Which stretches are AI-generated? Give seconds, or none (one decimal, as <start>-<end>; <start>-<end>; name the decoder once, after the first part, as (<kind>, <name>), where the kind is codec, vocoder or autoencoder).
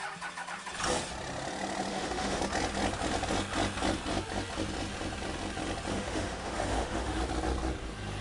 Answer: 1.9-2.4 (autoencoder, DAC-VAE); 5.9-7.2